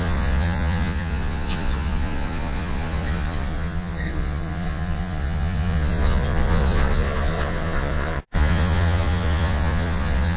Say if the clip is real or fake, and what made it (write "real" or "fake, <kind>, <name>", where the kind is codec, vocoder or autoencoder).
fake, vocoder, Vocos